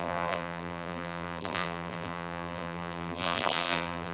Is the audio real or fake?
fake